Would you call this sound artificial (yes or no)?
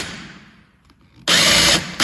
no